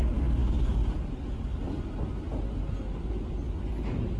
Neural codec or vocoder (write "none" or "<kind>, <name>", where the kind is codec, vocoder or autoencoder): none